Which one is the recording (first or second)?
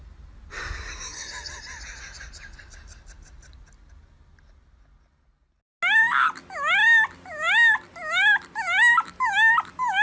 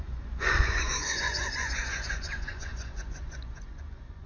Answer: first